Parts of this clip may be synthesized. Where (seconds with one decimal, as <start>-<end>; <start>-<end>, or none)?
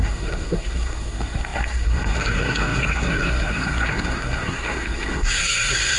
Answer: 0.0-6.0